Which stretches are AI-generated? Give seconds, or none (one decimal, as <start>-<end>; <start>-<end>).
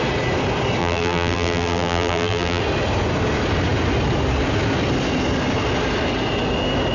0.8-2.6